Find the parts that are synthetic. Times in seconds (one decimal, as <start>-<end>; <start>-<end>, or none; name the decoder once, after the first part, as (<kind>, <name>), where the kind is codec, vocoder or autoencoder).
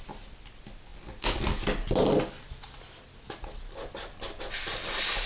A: none